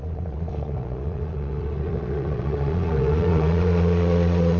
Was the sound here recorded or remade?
remade